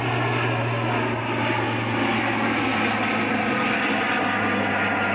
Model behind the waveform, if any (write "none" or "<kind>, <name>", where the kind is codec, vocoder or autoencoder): none